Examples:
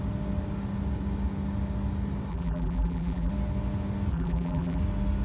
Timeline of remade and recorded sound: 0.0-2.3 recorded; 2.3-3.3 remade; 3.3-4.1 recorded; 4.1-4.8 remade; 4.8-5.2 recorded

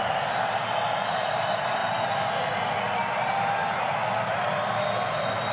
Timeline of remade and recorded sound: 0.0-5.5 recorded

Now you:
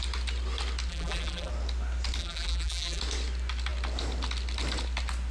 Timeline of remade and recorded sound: 0.0-0.9 recorded; 0.9-1.5 remade; 1.5-2.2 recorded; 2.2-3.0 remade; 3.0-5.3 recorded

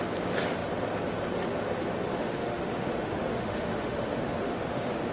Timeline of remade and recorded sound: 0.0-2.1 recorded; 2.1-5.1 remade